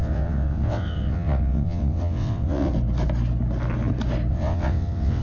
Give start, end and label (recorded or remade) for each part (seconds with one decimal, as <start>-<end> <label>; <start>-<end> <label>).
0.0-2.7 remade; 2.7-4.3 recorded; 4.3-5.2 remade